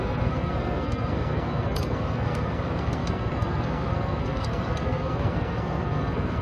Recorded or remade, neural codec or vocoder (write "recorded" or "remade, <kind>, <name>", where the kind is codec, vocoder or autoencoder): remade, codec, SNAC